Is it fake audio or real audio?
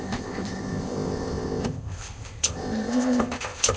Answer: fake